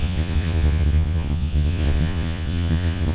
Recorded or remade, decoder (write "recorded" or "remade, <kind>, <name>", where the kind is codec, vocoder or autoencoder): remade, vocoder, Vocos